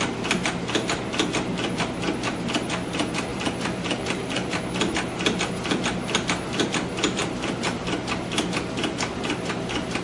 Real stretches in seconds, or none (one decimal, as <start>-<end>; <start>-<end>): 0.0-3.3; 4.6-7.2; 7.8-10.0